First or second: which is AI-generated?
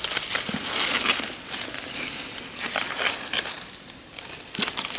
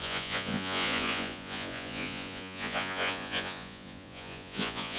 second